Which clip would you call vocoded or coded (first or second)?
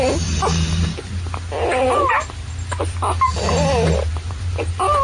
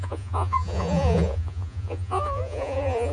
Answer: second